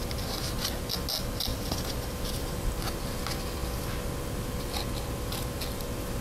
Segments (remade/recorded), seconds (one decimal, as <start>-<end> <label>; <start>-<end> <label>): 0.0-1.5 recorded; 1.5-2.5 remade; 2.5-6.2 recorded